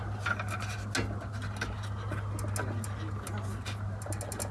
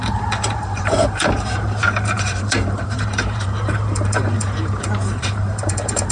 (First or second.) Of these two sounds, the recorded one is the first